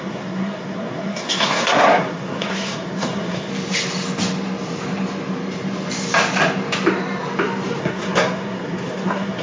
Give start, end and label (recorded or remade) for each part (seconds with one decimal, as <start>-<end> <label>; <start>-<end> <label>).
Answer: 0.0-3.5 remade; 3.5-7.8 recorded; 7.8-9.4 remade